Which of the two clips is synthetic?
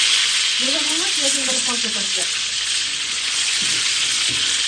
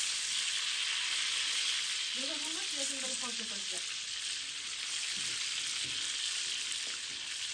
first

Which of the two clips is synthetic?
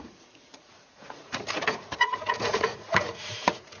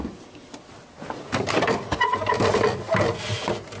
first